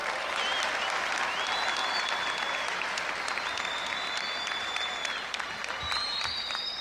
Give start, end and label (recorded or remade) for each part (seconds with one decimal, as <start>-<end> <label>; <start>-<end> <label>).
0.0-6.8 recorded

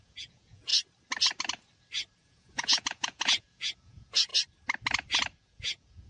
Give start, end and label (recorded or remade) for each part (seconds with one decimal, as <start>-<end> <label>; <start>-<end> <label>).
0.0-0.7 remade; 0.7-2.2 recorded; 2.2-4.3 remade; 4.3-5.4 recorded; 5.4-6.1 remade

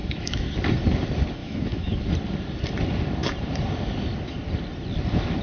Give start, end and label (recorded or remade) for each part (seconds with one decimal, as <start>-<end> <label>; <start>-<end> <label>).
0.0-0.5 remade; 0.5-1.4 recorded; 1.4-2.0 remade; 2.0-5.4 recorded

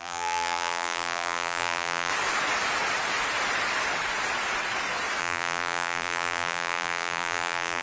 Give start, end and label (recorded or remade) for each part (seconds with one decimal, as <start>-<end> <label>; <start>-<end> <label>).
0.0-2.1 remade; 2.1-5.2 recorded; 5.2-7.8 remade

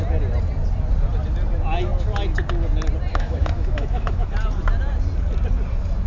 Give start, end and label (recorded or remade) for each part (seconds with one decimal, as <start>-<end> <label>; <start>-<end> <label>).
0.0-3.1 recorded; 3.1-4.3 remade; 4.3-6.1 recorded